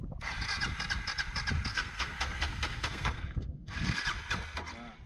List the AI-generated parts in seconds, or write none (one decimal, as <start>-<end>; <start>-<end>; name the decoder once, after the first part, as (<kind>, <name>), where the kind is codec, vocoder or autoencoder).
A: 1.7-4.0 (codec, SNAC)